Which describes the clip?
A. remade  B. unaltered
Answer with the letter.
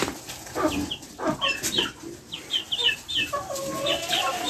B